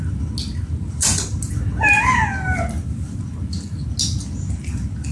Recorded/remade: recorded